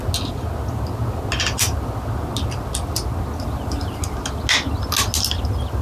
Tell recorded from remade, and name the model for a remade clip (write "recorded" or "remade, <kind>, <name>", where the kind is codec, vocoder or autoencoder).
recorded